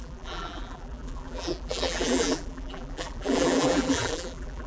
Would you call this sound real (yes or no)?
no